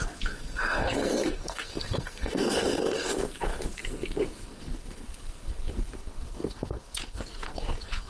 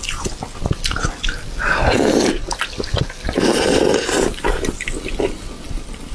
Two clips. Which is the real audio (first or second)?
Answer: second